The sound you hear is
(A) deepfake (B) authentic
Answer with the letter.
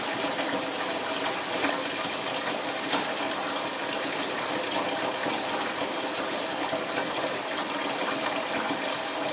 B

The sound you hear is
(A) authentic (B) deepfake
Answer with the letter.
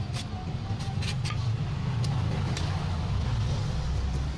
A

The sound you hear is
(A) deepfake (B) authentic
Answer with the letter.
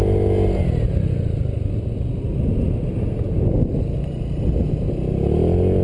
B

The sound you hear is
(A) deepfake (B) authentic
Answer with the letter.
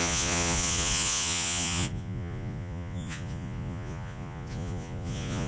A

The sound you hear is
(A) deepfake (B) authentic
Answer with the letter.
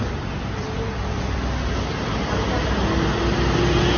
B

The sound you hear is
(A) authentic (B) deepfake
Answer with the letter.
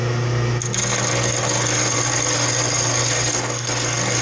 A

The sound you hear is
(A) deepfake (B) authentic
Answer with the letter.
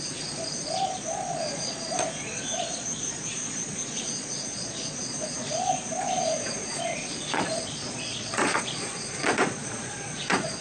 A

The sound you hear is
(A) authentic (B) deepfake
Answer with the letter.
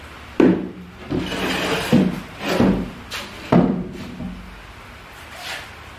A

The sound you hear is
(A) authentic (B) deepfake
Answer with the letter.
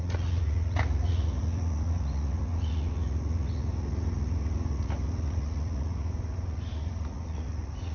B